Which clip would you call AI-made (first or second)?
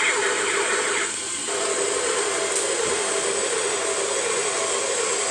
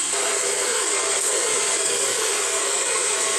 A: second